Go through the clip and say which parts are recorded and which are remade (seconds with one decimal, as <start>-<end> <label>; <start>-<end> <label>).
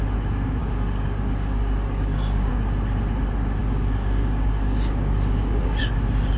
0.0-0.6 recorded; 0.6-2.5 remade; 2.5-3.6 recorded; 3.6-5.8 remade; 5.8-6.4 recorded